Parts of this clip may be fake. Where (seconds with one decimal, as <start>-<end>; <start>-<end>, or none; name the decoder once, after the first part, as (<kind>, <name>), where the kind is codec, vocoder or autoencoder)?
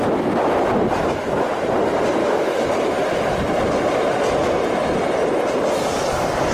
2.2-2.7 (autoencoder, DAC-VAE)